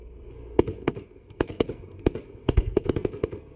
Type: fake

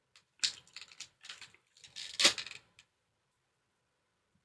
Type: real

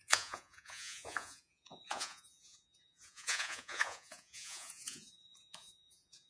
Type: fake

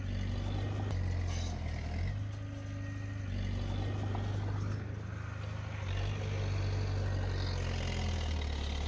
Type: real